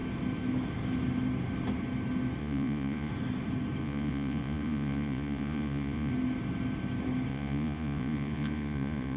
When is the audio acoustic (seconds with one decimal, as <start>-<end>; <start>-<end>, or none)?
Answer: 0.0-2.4; 3.1-3.8; 6.1-7.3